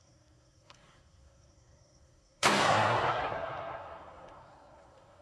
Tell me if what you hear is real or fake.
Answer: fake